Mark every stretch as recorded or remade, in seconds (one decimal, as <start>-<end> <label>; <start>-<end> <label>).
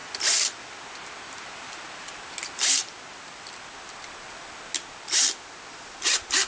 0.0-6.5 recorded